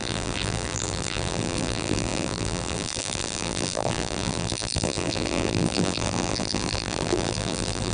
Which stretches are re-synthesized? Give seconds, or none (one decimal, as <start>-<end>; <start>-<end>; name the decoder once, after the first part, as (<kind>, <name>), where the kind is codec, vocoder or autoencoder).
0.0-7.9 (vocoder, BigVGAN v2)